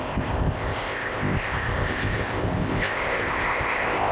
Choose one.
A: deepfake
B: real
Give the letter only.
A